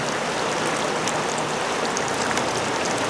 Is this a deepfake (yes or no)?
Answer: no